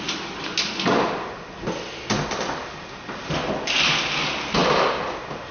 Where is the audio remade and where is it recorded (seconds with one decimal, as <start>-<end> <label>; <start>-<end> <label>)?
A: 0.0-5.5 recorded